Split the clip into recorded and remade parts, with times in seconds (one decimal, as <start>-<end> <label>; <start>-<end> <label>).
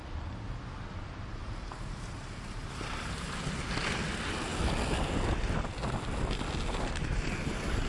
0.0-0.5 remade; 0.5-1.4 recorded; 1.4-3.7 remade; 3.7-7.9 recorded